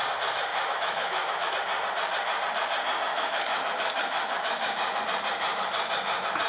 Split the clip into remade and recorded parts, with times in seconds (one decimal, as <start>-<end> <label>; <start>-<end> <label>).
0.0-0.5 recorded; 0.5-1.5 remade; 1.5-3.1 recorded; 3.1-5.0 remade; 5.0-6.5 recorded